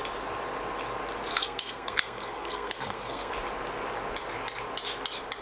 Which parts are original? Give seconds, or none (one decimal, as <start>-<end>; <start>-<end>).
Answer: 0.0-1.3; 3.3-5.4